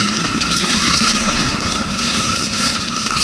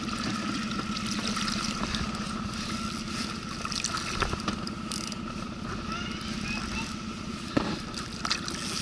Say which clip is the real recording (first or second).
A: second